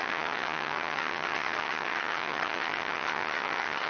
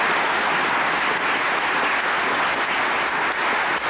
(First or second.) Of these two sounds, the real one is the second